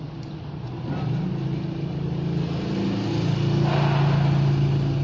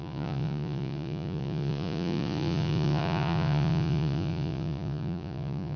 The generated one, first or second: second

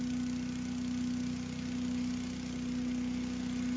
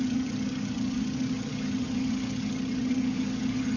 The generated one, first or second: second